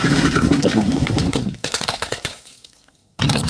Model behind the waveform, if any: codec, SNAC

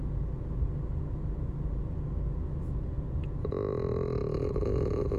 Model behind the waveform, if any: none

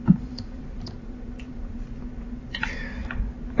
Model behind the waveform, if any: vocoder, BigVGAN v2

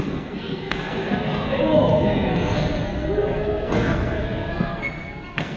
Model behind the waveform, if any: codec, SNAC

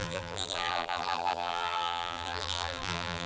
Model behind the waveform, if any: vocoder, BigVGAN v2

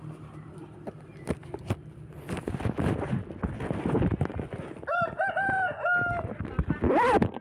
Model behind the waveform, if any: none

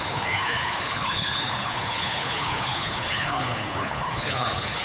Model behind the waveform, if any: codec, HILCodec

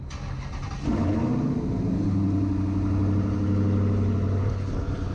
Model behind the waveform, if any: none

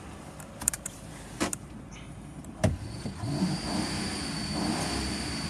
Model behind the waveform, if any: vocoder, BigVGAN v2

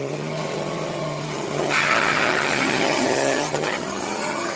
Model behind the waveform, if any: vocoder, HiFi-GAN